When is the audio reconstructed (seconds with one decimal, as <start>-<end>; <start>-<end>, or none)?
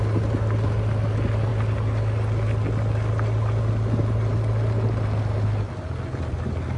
none